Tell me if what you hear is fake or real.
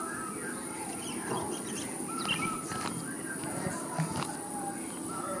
fake